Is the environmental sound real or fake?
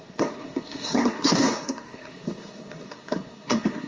fake